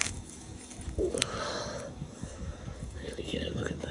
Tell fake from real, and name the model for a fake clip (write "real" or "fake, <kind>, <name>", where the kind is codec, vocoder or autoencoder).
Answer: fake, codec, DAC